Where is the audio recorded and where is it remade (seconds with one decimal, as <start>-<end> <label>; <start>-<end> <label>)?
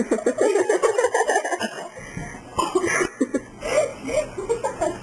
0.0-5.0 recorded